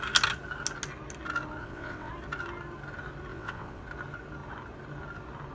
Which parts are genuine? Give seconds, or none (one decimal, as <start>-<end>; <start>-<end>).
0.0-1.6; 2.1-3.3; 3.8-5.5